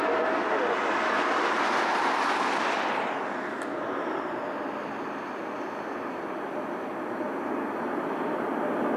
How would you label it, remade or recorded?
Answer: recorded